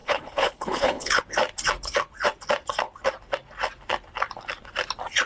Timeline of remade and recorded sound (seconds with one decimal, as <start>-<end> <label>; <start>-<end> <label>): 0.0-1.2 remade; 1.2-5.3 recorded